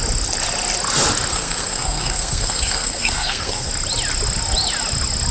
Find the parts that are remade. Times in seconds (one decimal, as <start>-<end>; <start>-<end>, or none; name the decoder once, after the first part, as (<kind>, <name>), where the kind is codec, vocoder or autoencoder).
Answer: 1.3-3.7 (codec, SNAC)